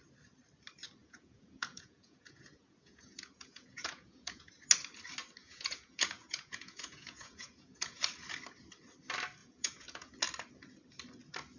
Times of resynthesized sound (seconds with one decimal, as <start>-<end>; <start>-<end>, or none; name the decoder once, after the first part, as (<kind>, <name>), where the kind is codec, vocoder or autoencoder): 1.0-4.5 (vocoder, Vocos); 5.4-8.0; 9.4-10.1